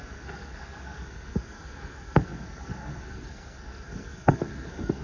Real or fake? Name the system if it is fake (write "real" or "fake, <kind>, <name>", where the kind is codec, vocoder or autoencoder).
fake, codec, SNAC